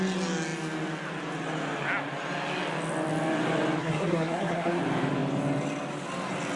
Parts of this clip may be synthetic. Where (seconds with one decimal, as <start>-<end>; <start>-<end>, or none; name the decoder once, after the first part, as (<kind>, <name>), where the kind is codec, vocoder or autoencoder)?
3.8-4.8 (codec, SNAC)